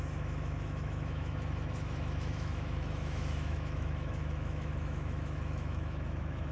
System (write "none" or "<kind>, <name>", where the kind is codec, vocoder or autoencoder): autoencoder, DAC-VAE